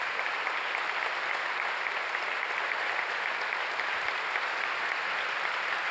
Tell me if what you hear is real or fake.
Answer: real